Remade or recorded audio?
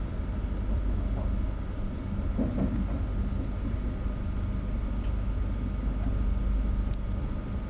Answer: recorded